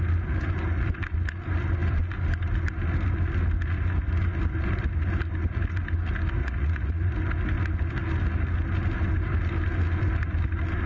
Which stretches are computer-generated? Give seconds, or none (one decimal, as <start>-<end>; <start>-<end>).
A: 6.4-7.1